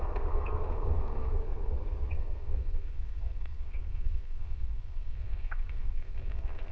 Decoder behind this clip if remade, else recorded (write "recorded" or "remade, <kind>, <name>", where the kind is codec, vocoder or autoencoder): remade, codec, SNAC